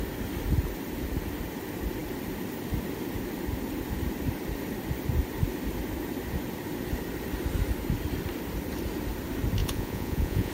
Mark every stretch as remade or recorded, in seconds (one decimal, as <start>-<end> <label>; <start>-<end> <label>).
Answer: 0.0-9.6 recorded; 9.6-10.5 remade